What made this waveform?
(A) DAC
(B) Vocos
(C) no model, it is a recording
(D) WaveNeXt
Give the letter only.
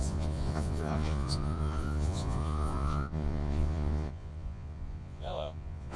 B